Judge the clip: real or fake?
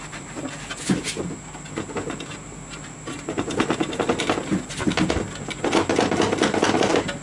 real